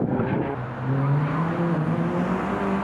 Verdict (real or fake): real